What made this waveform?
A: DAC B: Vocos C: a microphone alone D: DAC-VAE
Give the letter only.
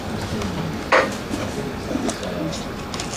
C